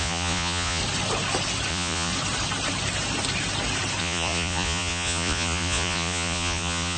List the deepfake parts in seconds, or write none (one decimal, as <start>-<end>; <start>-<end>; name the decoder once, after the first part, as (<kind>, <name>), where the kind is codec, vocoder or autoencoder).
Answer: 0.0-0.8 (vocoder, Vocos); 1.7-2.1; 4.0-7.0